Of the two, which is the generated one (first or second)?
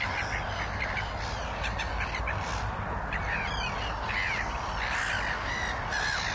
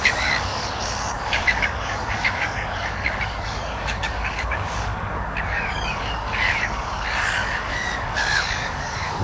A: second